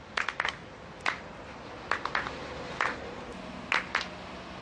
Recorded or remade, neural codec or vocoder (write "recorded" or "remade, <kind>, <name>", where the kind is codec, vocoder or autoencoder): recorded